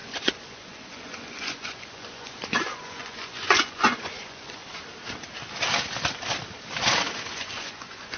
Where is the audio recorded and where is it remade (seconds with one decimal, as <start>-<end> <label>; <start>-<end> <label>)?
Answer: 0.0-4.6 remade; 4.6-7.3 recorded; 7.3-8.2 remade